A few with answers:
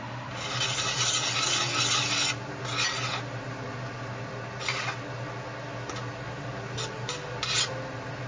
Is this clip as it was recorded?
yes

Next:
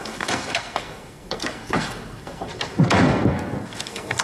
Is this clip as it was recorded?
no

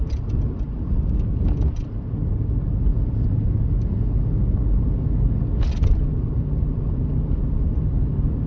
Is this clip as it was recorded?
yes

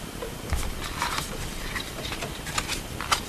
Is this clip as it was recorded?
yes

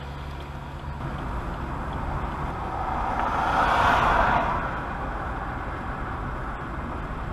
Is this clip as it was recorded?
yes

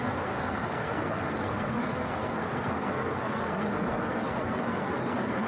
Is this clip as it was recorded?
no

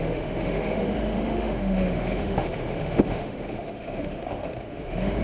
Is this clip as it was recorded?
no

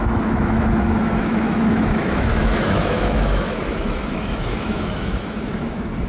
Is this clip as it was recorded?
no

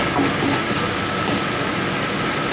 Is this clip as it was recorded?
yes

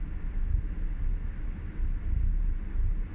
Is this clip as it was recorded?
yes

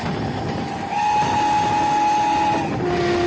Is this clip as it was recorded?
yes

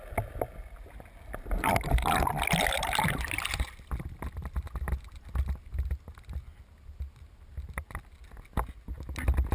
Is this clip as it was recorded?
yes